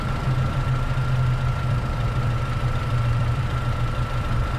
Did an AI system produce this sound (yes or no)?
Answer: yes